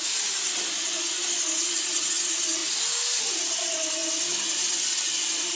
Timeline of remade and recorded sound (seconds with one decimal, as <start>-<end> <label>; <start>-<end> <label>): 0.0-5.6 recorded